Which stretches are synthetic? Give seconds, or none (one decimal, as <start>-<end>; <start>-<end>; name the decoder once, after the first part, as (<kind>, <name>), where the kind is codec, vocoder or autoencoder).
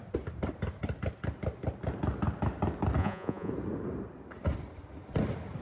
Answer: 3.0-3.5 (vocoder, Vocos)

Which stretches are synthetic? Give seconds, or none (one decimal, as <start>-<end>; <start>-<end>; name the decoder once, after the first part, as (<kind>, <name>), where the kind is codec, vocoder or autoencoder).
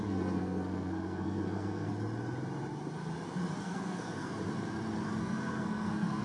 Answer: 0.0-1.9 (codec, SNAC); 3.6-4.3; 5.2-6.2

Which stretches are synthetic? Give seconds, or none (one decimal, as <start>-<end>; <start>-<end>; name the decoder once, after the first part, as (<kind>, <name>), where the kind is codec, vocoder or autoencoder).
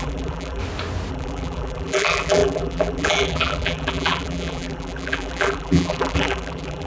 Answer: 0.0-0.6 (vocoder, BigVGAN v2); 1.1-6.9